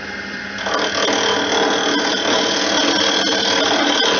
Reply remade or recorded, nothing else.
recorded